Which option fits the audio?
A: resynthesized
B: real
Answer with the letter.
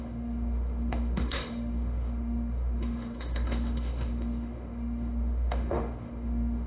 A